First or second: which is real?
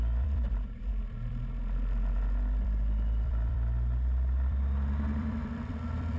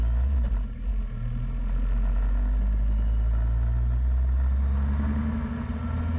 second